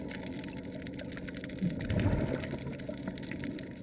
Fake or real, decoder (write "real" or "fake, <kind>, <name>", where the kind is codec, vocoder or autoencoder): real